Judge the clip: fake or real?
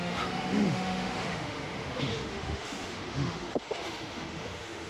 fake